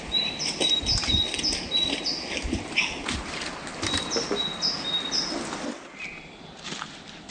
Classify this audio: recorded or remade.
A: recorded